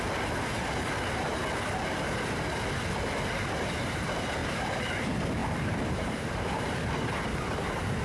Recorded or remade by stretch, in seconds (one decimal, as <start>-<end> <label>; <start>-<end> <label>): 0.0-4.4 recorded; 4.4-5.0 remade; 5.0-5.4 recorded; 5.4-8.0 remade